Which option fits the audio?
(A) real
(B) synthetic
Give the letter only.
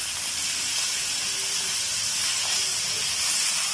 A